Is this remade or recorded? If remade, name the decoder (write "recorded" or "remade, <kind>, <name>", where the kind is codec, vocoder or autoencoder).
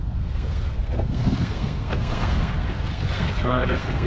remade, codec, SNAC